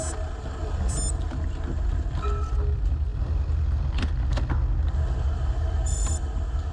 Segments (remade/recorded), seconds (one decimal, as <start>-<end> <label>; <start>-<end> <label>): 0.0-6.7 recorded

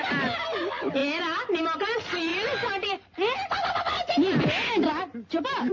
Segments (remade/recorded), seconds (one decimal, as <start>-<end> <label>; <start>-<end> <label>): 0.0-2.3 recorded; 2.3-2.9 remade; 2.9-5.1 recorded; 5.1-5.7 remade

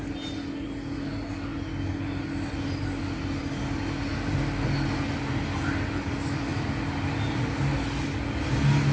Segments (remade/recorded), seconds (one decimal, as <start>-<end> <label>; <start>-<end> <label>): 0.0-8.9 recorded

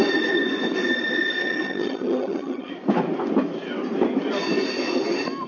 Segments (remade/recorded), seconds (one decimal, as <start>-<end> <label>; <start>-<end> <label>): 0.0-1.4 recorded; 1.4-2.7 remade; 2.7-5.5 recorded

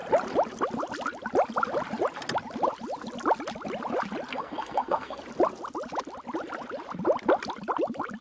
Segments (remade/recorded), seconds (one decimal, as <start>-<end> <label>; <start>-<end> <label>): 0.0-4.3 recorded; 4.3-5.2 remade; 5.2-8.2 recorded

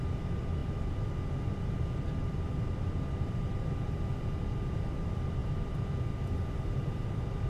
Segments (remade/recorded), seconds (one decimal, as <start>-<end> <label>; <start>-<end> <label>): 0.0-7.5 remade